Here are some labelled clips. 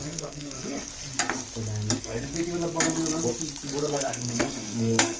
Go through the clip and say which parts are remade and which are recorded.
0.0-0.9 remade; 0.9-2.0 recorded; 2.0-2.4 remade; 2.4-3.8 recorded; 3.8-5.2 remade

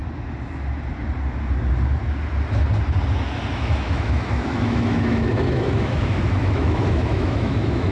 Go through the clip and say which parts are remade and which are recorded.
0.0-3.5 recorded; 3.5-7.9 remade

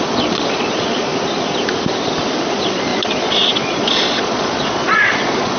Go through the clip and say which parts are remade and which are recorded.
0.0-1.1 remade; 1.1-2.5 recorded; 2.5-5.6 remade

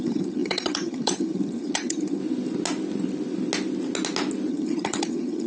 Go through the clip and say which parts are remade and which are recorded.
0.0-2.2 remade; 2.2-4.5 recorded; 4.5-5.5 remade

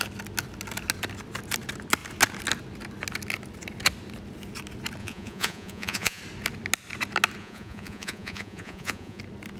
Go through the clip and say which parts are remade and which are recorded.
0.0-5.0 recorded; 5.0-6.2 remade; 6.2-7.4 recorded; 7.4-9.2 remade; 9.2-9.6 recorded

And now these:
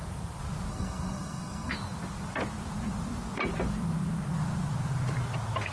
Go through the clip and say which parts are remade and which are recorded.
0.0-0.7 recorded; 0.7-1.7 remade; 1.7-5.7 recorded